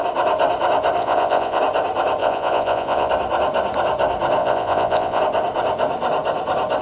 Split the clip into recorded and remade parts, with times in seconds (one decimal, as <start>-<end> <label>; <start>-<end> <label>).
0.0-1.0 recorded; 1.0-1.6 remade; 1.6-2.2 recorded; 2.2-3.1 remade; 3.1-4.4 recorded; 4.4-5.2 remade; 5.2-6.8 recorded